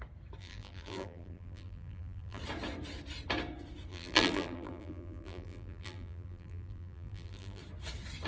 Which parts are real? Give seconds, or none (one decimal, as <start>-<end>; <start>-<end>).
0.0-0.4; 2.4-3.9; 7.6-8.3

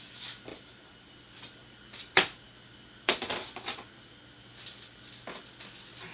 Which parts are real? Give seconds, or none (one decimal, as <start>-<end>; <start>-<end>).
0.0-0.5; 1.2-6.1

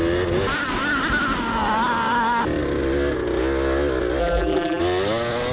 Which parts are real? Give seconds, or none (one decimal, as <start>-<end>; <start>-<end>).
0.0-4.2; 4.8-5.5

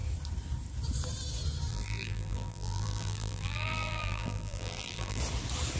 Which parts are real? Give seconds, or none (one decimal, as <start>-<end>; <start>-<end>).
0.0-1.7; 5.2-5.8

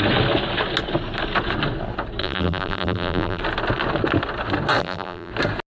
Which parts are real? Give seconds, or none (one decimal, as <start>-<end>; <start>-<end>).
0.0-2.2; 3.4-4.8; 5.3-5.7

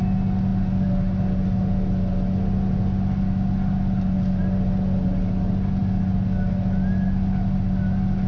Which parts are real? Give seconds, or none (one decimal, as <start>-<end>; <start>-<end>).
0.0-8.3

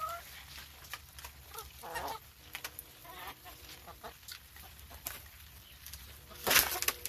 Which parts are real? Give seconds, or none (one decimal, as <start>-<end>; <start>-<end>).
0.0-3.0; 6.0-7.1

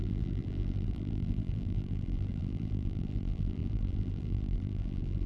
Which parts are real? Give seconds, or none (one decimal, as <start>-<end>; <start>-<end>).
none